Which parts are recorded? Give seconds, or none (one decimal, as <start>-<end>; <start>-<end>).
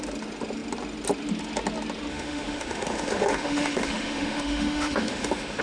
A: 0.0-2.1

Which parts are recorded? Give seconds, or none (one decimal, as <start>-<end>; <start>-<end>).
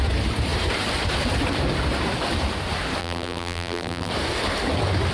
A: 0.0-3.0; 4.1-5.1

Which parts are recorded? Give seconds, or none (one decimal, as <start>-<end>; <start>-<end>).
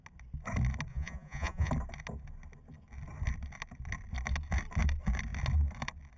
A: 0.0-0.9; 1.7-6.2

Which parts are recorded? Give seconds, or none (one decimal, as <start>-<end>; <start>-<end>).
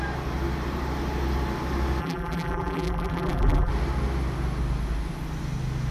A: 0.0-2.0; 3.7-5.9